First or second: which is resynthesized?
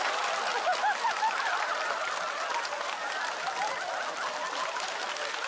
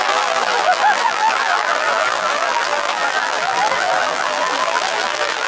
second